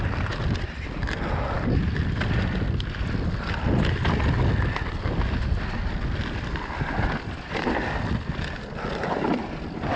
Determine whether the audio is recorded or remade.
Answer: recorded